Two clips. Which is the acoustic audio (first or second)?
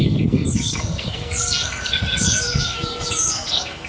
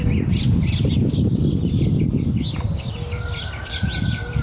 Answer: second